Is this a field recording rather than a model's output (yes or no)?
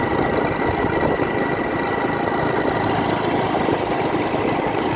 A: yes